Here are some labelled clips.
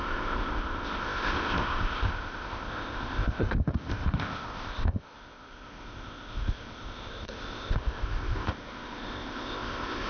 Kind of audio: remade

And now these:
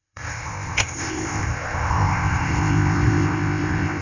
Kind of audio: remade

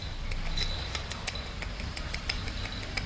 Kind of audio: recorded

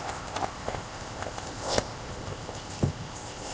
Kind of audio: remade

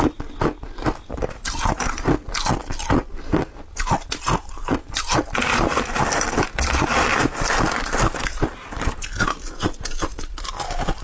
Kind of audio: recorded